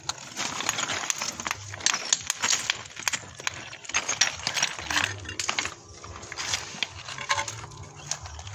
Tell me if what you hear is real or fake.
real